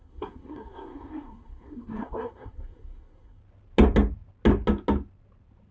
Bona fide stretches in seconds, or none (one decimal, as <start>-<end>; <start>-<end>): 3.4-5.7